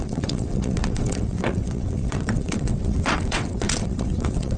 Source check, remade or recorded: remade